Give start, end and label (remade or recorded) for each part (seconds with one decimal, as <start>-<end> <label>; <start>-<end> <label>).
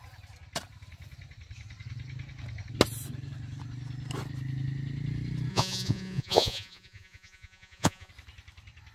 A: 0.0-5.5 recorded; 5.5-8.1 remade; 8.1-8.9 recorded